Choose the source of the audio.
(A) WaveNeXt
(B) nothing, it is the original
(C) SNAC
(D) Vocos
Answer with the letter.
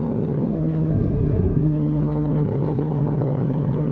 C